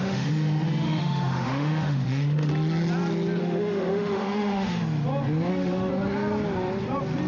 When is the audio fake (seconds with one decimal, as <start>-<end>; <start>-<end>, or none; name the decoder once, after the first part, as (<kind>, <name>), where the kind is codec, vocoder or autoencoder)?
0.0-2.5 (autoencoder, DAC-VAE); 3.4-4.8; 5.5-5.9